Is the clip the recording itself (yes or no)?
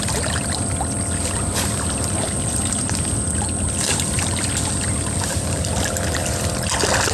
yes